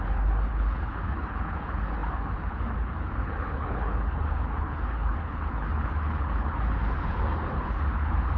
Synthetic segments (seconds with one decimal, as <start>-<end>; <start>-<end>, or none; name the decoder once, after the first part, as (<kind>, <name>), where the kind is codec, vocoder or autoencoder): 0.0-8.4 (codec, HILCodec)